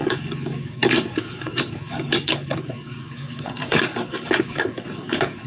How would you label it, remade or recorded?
remade